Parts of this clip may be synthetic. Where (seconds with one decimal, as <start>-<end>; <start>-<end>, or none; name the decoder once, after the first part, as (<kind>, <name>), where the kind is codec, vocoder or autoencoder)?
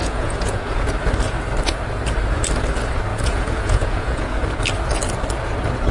0.0-0.9 (vocoder, Vocos); 3.1-4.4